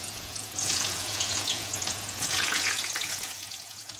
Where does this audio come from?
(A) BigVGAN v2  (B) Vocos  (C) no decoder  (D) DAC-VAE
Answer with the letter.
B